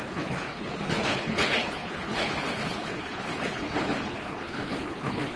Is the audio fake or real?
fake